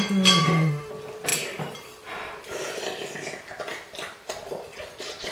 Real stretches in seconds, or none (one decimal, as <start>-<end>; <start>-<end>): 0.0-0.4; 0.9-5.3